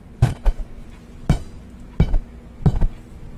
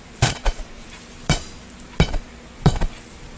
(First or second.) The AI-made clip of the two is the second